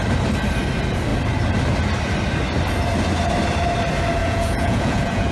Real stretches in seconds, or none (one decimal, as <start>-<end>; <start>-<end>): 0.0-4.2